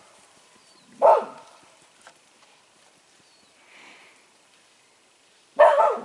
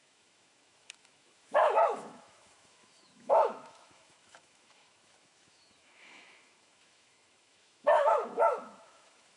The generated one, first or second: second